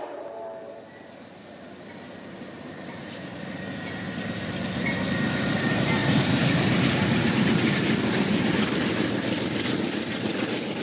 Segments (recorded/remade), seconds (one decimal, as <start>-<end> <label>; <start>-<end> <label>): 0.0-10.8 remade